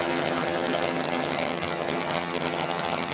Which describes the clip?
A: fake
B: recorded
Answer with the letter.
A